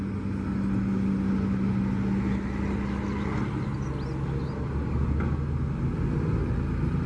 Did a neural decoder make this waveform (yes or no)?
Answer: no